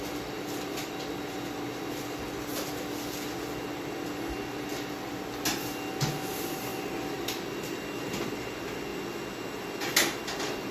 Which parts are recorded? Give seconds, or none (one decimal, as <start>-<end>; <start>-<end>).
0.0-10.7